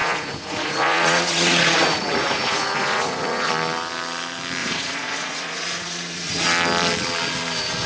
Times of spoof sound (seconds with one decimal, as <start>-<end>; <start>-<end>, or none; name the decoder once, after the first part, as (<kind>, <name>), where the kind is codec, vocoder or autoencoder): 0.0-3.5 (vocoder, Vocos); 4.6-6.4

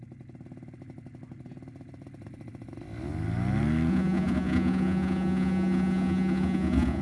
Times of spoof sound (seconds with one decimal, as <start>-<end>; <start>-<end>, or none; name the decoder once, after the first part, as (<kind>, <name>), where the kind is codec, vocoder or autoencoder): 3.9-7.0 (vocoder, Vocos)